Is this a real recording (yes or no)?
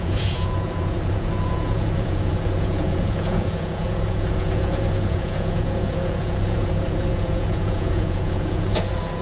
no